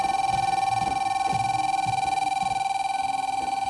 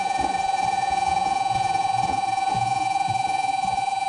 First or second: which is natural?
first